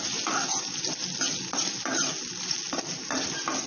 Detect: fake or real real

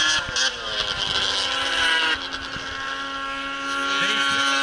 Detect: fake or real real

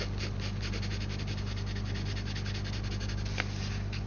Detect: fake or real real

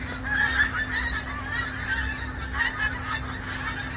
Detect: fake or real real